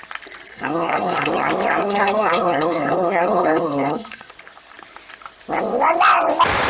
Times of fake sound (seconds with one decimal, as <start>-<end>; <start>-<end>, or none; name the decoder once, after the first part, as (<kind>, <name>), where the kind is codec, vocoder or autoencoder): 0.5-1.3 (codec, SNAC); 1.8-4.3